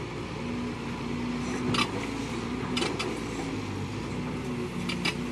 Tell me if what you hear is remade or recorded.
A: recorded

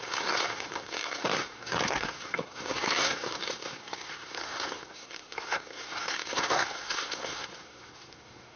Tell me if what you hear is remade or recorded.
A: remade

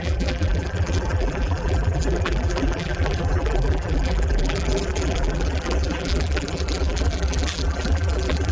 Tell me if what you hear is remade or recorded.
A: remade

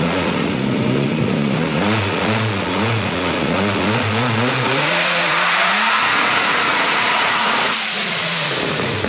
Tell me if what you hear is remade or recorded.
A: remade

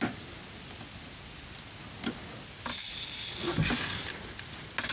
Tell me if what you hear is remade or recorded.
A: recorded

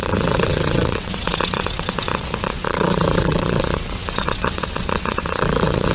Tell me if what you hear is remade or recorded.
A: remade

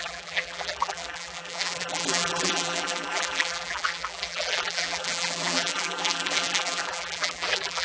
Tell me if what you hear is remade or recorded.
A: remade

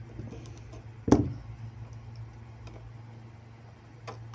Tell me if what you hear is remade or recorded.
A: recorded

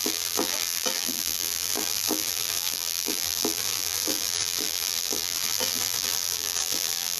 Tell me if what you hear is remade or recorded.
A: remade